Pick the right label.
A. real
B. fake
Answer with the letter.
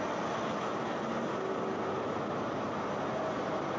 A